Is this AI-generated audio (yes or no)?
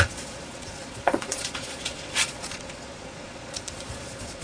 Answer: yes